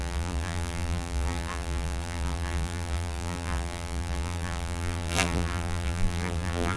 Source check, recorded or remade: remade